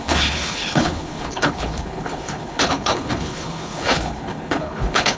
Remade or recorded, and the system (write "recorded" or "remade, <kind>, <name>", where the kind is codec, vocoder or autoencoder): remade, codec, HILCodec